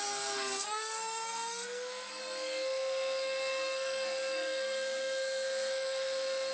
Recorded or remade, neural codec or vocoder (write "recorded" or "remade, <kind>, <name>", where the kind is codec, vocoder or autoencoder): remade, codec, SNAC